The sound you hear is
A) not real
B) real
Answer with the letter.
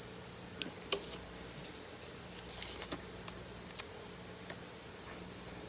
B